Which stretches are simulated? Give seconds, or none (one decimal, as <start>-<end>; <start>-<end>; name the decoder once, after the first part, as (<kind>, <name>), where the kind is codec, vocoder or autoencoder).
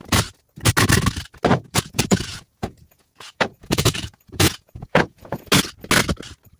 1.5-5.5 (vocoder, Vocos)